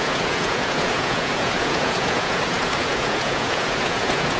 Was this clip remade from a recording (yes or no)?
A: yes